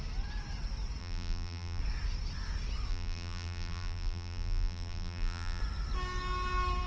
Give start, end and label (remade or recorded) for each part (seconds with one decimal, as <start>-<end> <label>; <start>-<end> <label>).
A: 0.0-1.0 recorded; 1.0-1.8 remade; 1.8-2.9 recorded; 2.9-5.6 remade; 5.6-6.9 recorded